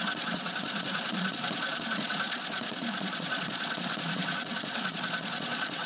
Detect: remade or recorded remade